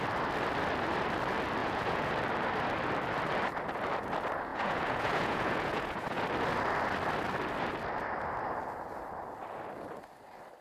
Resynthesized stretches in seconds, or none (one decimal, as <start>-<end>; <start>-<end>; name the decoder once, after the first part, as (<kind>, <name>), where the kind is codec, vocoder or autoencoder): 1.6-2.1 (vocoder, Vocos); 4.5-6.2